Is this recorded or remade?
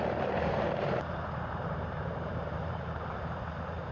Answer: remade